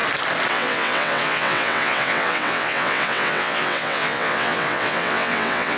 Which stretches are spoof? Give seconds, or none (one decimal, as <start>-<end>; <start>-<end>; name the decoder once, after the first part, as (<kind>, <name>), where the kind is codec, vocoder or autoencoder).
0.5-5.8 (vocoder, WaveNeXt)